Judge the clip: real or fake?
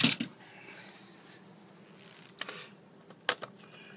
real